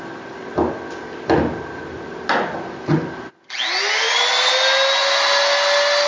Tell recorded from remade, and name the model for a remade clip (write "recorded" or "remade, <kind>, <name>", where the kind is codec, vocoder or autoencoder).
recorded